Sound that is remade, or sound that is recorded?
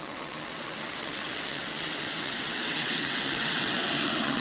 remade